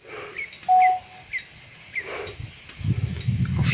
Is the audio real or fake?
real